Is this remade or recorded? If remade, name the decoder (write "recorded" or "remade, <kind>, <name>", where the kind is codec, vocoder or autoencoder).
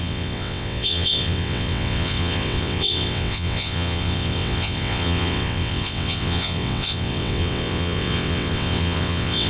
remade, vocoder, WaveNeXt